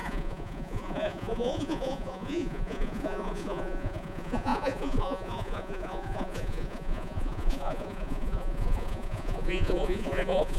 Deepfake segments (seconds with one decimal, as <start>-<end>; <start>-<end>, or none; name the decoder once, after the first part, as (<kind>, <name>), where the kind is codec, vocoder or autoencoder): 0.0-10.6 (vocoder, Vocos)